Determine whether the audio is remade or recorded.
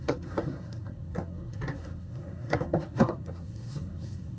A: remade